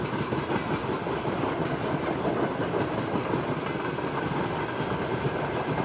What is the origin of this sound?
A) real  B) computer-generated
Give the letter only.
A